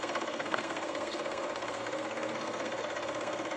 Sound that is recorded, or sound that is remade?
remade